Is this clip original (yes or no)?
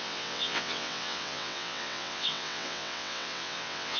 no